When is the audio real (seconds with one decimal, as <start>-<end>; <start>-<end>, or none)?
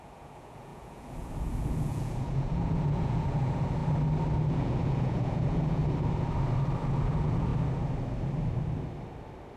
3.8-4.5; 5.8-6.9; 7.5-9.6